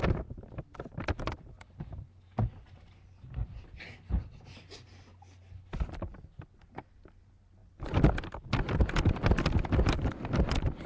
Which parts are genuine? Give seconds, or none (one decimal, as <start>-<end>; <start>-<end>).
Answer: 0.0-10.9